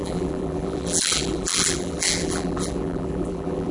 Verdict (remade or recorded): remade